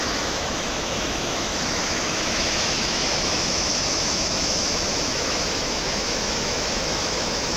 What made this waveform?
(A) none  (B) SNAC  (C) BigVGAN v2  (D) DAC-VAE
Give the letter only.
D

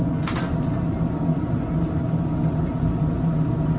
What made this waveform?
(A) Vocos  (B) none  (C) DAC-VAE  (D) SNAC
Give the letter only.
B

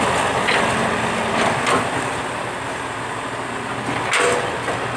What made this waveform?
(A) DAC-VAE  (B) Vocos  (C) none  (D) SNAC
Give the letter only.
C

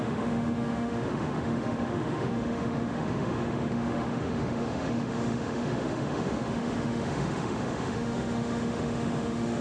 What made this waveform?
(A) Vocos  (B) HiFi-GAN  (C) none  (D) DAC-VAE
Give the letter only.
D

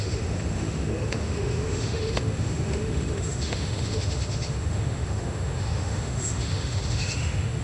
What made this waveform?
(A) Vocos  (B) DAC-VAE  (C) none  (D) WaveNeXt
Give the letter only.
B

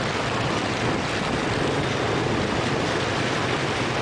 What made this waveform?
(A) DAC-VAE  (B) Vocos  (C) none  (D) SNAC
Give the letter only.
C